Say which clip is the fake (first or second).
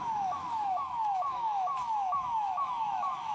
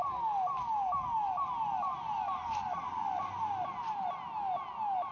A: first